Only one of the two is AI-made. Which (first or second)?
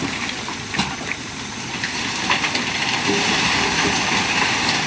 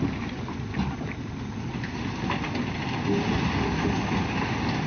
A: first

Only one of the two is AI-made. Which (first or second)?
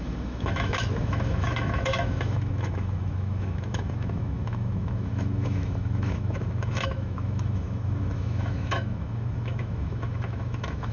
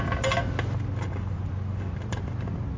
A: first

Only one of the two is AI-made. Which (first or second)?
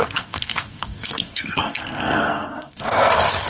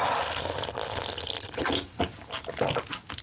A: first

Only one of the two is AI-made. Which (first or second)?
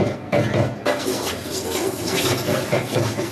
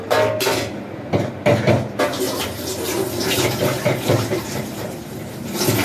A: first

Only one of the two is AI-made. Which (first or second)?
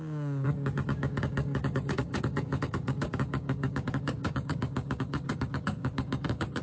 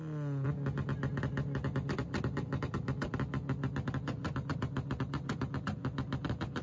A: first